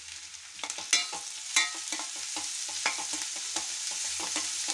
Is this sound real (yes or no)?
yes